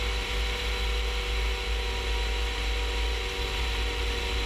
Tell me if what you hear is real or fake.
real